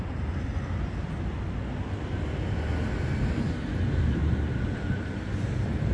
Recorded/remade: recorded